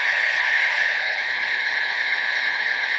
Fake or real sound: fake